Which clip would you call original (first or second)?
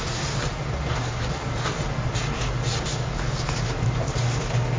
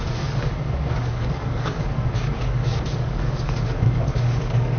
first